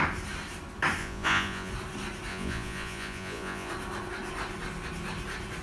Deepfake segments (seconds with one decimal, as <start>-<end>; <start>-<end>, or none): 1.0-1.7; 2.3-3.7